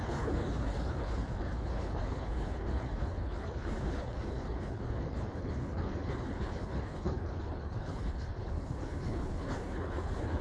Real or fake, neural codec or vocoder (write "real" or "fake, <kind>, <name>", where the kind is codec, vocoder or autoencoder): fake, codec, HILCodec